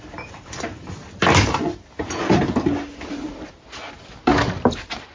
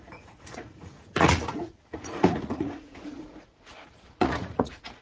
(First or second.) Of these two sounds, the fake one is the second